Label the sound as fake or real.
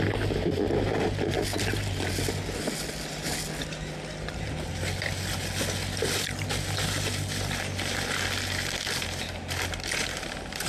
real